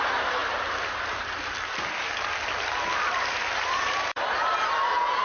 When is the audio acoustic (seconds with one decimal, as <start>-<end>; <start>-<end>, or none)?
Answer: 0.0-5.2

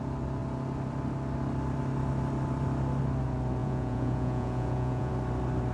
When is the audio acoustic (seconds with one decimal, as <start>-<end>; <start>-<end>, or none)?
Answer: 0.0-3.6; 5.1-5.7

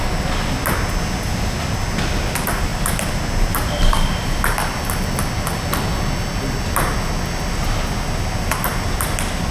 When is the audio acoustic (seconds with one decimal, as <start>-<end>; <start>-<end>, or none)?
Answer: 0.0-9.5

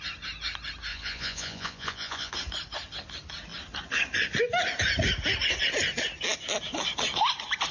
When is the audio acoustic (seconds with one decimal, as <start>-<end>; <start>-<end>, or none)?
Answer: 0.0-0.9; 2.3-7.7

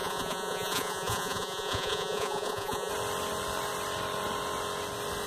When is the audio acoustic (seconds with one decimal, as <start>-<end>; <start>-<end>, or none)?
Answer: 2.9-5.3

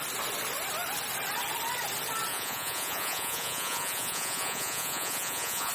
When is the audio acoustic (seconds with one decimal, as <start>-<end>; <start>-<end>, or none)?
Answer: 0.0-2.3

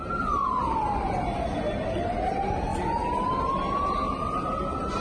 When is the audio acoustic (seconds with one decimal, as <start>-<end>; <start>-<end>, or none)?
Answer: 0.0-5.0

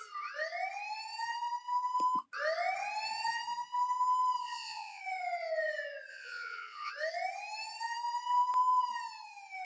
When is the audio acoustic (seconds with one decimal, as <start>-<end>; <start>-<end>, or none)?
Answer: 0.0-4.4; 5.0-6.1; 6.9-9.6